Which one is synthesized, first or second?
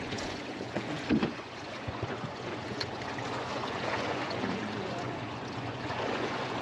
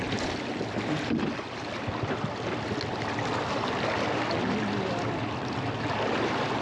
first